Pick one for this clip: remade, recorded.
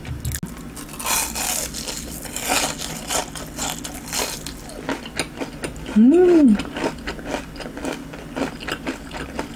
recorded